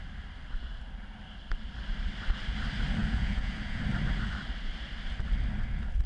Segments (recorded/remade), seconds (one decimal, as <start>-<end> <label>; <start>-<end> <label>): 0.0-3.0 recorded; 3.0-3.8 remade; 3.8-6.1 recorded